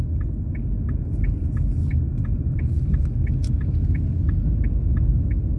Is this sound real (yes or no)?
yes